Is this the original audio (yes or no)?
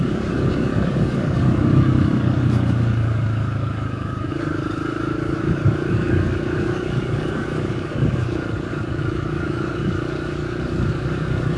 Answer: no